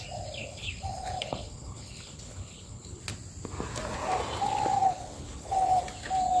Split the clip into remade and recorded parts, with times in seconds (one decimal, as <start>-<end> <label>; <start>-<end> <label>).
0.0-0.4 recorded; 0.4-3.0 remade; 3.0-4.8 recorded; 4.8-5.8 remade; 5.8-6.4 recorded